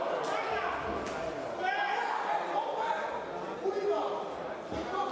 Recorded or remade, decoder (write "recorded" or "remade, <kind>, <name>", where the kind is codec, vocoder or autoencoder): recorded